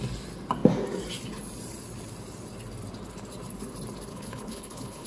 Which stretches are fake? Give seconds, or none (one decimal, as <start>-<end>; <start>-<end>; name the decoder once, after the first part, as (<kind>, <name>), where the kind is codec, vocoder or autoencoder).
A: 4.1-5.1 (codec, HILCodec)